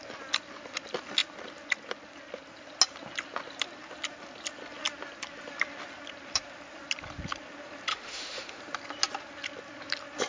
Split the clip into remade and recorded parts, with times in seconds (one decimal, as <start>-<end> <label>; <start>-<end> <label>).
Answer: 0.0-7.9 recorded; 7.9-8.6 remade; 8.6-10.3 recorded